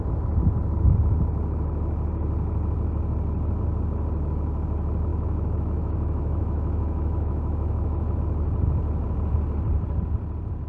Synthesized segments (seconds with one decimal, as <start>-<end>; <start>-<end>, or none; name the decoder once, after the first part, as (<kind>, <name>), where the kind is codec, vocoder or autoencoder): 5.1-8.2 (autoencoder, DAC-VAE)